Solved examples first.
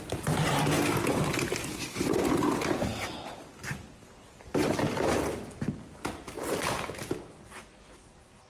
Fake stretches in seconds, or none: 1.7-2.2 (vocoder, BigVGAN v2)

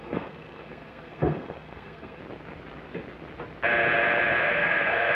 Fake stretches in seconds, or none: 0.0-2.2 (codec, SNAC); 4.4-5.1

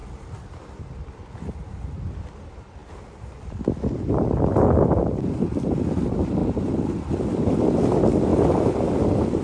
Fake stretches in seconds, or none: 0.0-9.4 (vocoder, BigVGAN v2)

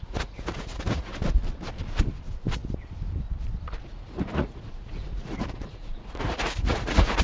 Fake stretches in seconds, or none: 0.0-1.1 (vocoder, Vocos); 3.8-7.2

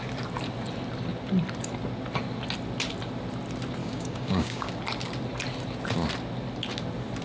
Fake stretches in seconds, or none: 3.8-4.7 (codec, DAC)

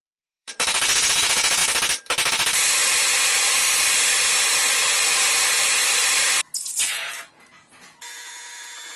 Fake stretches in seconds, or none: 0.0-0.5 (vocoder, Vocos); 1.1-1.6; 6.8-9.0